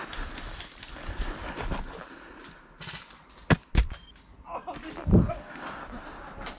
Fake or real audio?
real